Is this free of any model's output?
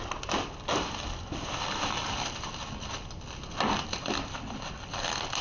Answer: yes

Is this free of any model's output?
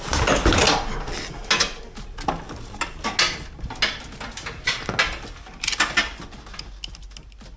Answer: yes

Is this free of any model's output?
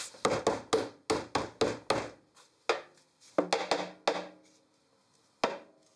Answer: yes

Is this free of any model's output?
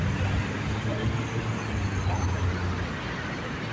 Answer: yes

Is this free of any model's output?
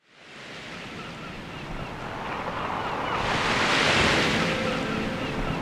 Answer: yes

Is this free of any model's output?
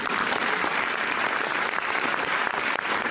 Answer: no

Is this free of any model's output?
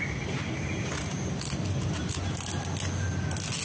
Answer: yes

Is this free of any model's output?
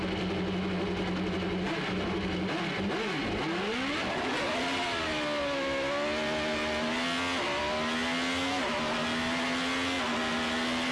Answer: yes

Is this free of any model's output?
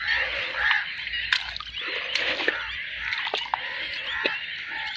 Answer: yes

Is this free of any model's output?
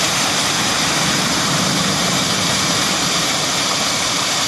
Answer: no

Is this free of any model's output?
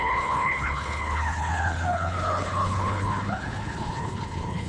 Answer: no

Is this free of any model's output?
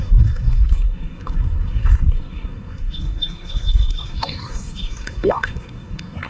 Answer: no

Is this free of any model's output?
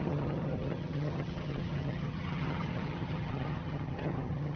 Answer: no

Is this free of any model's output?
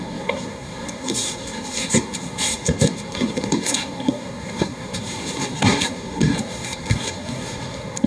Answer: no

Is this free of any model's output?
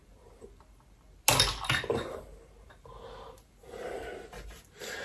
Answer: yes